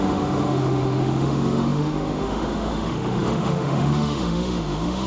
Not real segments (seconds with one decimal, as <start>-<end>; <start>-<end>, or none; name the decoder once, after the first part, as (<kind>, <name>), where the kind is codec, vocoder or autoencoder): 0.0-5.1 (autoencoder, DAC-VAE)